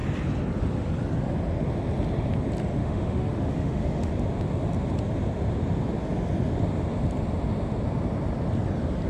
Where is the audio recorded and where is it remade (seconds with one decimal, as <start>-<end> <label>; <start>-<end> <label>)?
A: 0.0-2.8 recorded; 2.8-4.1 remade; 4.1-9.1 recorded